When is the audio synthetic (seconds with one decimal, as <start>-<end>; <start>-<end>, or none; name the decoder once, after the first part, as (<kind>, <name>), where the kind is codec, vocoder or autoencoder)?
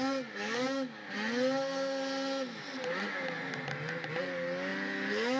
0.0-1.0 (codec, DAC); 4.2-5.4